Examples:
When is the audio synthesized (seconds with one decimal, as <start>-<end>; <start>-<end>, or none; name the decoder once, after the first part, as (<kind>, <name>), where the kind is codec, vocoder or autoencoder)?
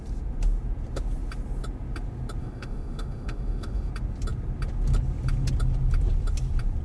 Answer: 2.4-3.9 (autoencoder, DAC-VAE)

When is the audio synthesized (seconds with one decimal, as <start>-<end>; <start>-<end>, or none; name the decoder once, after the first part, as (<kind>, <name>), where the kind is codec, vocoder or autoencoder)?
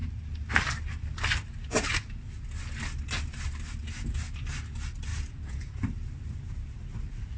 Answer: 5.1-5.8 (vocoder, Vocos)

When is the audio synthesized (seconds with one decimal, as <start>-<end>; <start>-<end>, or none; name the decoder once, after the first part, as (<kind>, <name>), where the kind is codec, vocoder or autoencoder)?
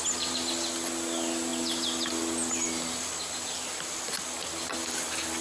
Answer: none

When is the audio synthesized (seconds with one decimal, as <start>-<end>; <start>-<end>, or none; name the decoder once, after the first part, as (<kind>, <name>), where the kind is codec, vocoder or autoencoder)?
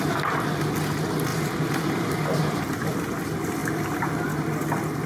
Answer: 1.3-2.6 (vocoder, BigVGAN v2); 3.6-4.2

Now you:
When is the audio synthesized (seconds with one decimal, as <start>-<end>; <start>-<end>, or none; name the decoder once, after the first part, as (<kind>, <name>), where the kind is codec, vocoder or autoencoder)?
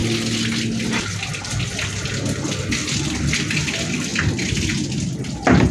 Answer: none